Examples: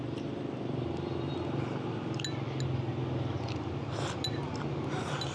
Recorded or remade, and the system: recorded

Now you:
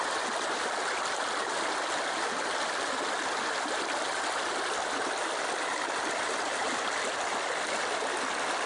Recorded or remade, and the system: recorded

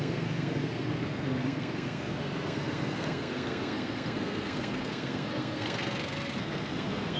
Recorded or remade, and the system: remade, codec, SNAC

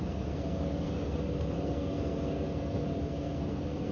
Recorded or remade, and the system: remade, codec, SNAC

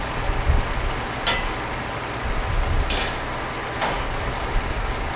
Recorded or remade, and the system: recorded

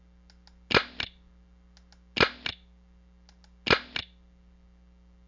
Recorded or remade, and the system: recorded